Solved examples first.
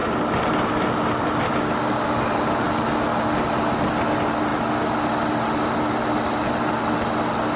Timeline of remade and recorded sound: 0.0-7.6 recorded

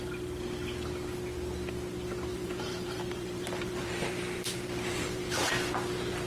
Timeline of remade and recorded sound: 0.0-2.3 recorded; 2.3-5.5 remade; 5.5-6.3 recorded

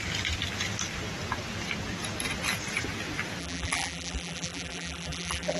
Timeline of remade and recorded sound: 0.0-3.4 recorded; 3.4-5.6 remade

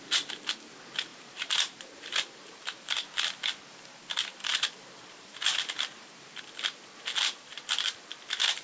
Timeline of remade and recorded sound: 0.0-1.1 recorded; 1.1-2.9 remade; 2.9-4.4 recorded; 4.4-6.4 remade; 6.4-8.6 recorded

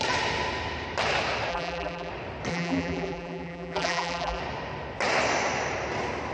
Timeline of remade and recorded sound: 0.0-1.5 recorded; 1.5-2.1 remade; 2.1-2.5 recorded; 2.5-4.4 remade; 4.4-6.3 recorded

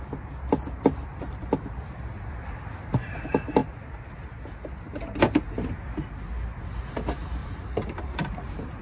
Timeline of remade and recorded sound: 0.0-7.4 recorded; 7.4-8.8 remade